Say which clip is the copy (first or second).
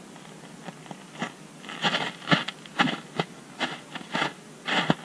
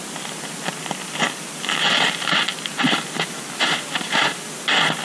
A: second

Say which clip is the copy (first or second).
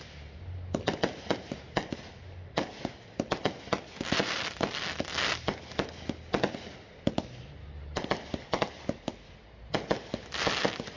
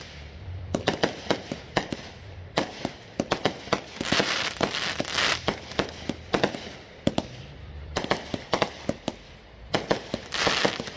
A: second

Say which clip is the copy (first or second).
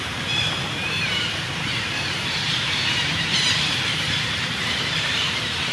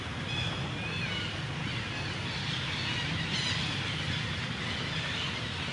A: first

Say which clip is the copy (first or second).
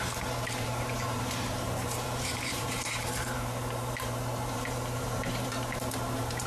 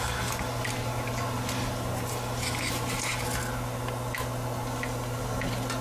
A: first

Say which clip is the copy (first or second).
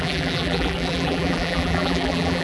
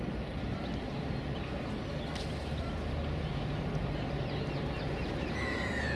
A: first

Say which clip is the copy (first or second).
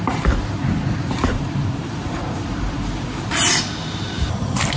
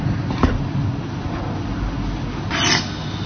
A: first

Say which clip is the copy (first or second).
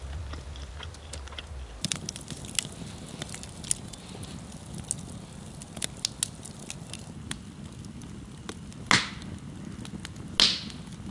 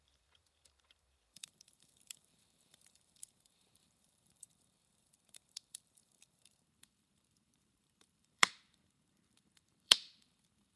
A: second